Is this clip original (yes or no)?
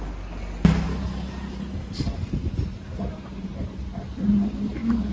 yes